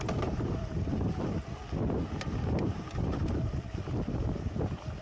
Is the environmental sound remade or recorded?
recorded